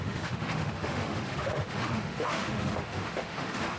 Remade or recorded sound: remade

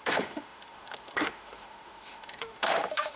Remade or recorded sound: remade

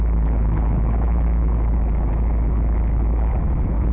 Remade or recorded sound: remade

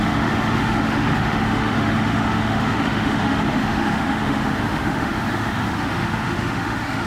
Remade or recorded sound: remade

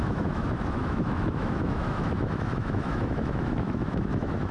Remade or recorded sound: remade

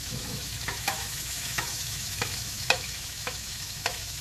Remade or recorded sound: remade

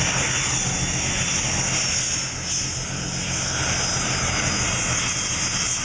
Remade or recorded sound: recorded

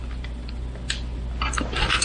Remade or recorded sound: recorded